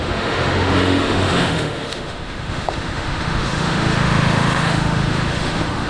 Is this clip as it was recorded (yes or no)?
no